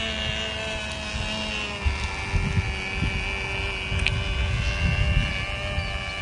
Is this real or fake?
real